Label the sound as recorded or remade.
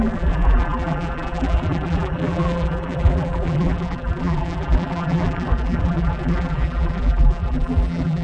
remade